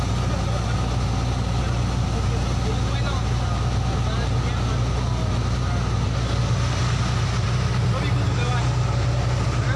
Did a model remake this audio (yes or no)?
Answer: no